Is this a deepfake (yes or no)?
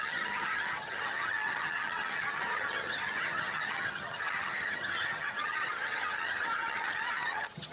yes